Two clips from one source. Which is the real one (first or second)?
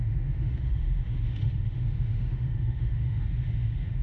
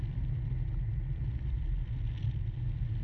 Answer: second